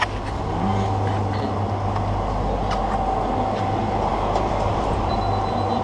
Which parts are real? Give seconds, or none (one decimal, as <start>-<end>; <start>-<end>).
0.0-4.1; 5.1-5.8

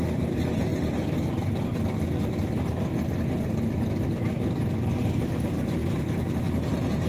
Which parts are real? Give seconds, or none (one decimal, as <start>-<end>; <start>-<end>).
0.7-5.0; 5.8-6.4

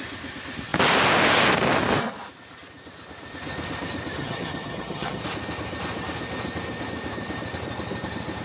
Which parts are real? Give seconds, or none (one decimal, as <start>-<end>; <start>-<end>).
0.0-4.2; 5.2-8.4

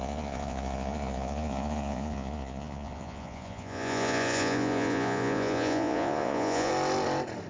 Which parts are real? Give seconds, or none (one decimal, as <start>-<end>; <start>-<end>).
6.7-7.5

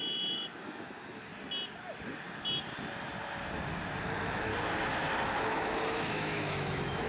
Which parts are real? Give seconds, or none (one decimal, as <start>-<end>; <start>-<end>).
1.3-4.0; 4.5-5.4

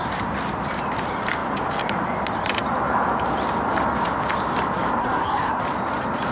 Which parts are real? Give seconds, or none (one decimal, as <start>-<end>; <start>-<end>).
0.0-5.0; 5.6-6.3